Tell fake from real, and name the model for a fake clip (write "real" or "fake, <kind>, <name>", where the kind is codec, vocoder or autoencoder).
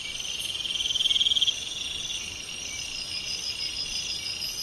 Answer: real